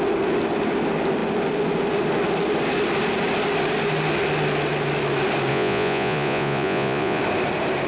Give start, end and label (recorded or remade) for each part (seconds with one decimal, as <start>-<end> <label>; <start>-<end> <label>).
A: 0.0-5.5 recorded; 5.5-7.2 remade; 7.2-7.9 recorded